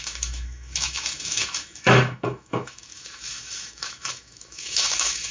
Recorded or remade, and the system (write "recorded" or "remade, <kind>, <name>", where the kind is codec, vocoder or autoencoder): remade, autoencoder, DAC-VAE